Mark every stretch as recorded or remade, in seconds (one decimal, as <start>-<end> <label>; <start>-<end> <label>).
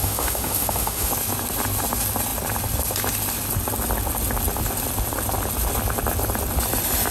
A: 0.0-1.1 remade; 1.1-7.1 recorded